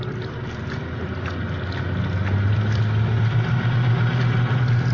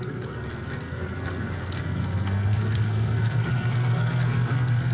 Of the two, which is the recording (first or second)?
first